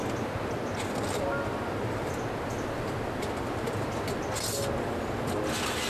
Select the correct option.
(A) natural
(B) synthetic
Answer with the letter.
A